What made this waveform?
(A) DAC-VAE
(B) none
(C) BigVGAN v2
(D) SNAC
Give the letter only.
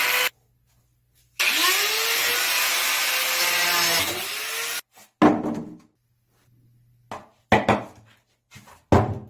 B